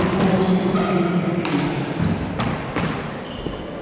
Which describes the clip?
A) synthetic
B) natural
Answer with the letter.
B